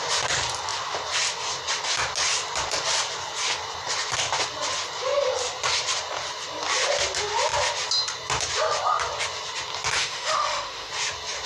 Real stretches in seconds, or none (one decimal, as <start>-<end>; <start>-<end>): 0.0-10.0; 10.9-11.5